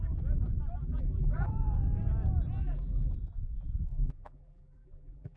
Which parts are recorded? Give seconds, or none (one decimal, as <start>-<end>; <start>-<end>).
0.0-0.8; 1.5-2.6; 3.1-3.9

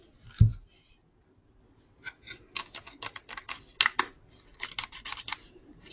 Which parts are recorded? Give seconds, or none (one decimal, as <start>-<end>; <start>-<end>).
0.0-5.9

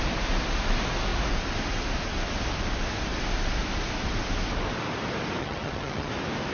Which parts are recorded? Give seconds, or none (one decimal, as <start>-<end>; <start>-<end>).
0.0-5.4; 6.1-6.5

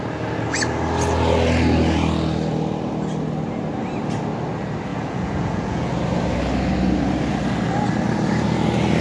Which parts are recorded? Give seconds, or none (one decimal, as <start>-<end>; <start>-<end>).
0.0-4.9; 5.9-9.0

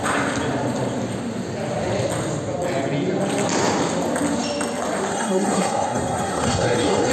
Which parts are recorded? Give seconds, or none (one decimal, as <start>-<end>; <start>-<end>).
0.0-5.1

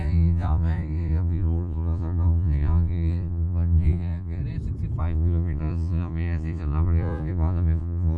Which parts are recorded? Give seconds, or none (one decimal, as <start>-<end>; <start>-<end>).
4.4-5.0

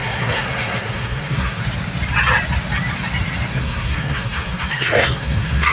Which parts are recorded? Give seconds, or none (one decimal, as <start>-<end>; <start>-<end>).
1.6-3.5